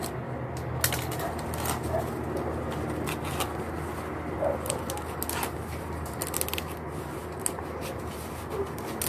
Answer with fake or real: real